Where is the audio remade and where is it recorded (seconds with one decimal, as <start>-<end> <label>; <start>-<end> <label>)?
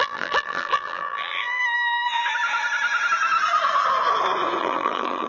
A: 0.0-1.6 remade; 1.6-4.6 recorded; 4.6-5.3 remade